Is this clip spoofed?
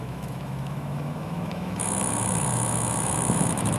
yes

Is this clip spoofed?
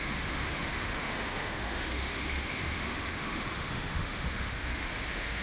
yes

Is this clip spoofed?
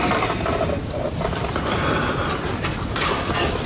no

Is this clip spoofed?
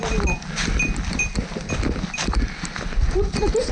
no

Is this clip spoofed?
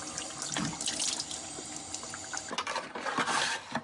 no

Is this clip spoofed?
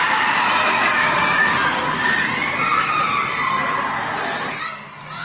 no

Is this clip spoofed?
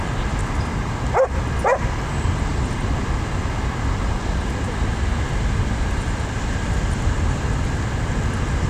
no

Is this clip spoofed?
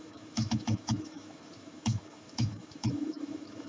yes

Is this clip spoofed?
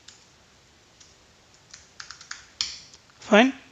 no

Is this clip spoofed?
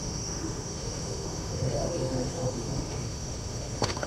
yes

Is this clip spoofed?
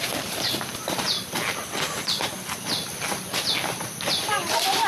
no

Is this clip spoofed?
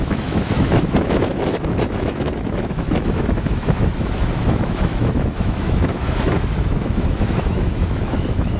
yes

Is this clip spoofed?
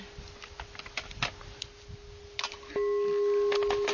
no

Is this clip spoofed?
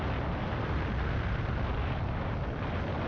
no